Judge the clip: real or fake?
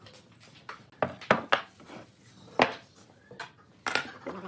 real